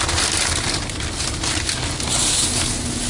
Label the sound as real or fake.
real